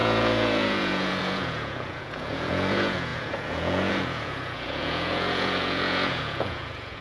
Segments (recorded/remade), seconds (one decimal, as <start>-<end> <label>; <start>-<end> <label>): 0.0-7.0 remade